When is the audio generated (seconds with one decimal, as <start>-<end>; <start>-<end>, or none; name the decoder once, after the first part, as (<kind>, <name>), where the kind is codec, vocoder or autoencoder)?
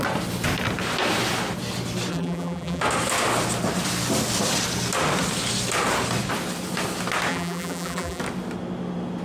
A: 2.1-2.8 (vocoder, BigVGAN v2); 7.3-8.2